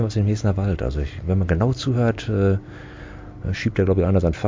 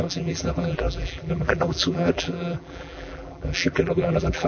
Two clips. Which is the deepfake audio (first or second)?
second